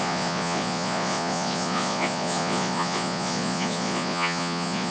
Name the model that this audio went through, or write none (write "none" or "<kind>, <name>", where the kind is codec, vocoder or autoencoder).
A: vocoder, Vocos